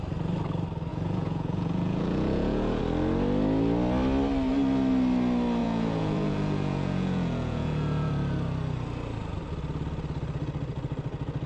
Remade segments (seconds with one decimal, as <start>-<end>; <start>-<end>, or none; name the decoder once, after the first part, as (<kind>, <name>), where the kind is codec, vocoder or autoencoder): 0.9-2.8 (vocoder, Vocos); 5.6-8.1

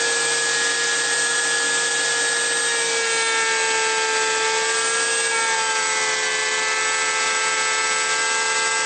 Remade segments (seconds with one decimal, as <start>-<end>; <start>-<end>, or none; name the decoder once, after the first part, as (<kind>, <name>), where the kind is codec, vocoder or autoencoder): none